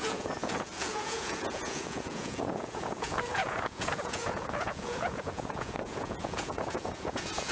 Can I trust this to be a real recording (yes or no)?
no